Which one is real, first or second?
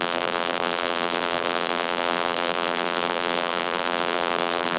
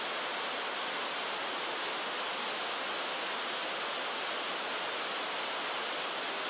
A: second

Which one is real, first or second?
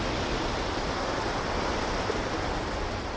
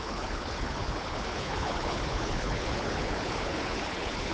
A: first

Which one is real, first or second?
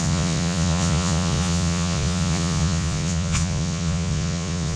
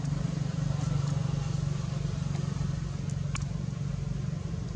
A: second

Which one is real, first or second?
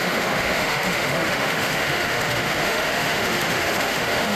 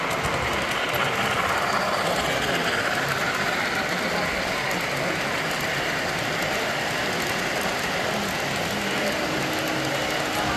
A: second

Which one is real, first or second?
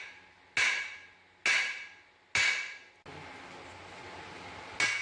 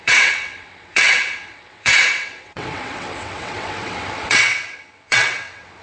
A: first